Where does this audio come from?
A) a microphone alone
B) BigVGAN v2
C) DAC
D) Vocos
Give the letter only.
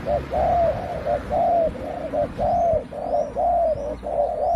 A